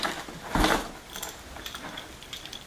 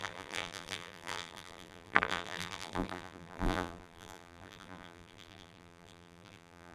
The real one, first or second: first